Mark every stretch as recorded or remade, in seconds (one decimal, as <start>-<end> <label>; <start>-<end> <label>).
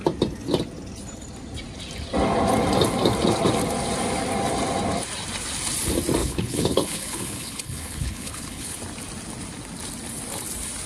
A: 0.0-6.2 recorded; 6.2-8.8 remade; 8.8-10.9 recorded